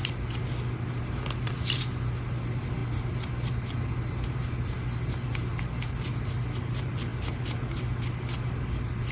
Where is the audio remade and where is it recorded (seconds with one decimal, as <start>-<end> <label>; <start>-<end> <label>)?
0.0-9.1 recorded